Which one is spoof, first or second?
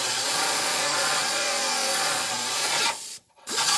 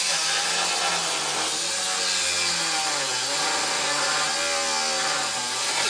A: first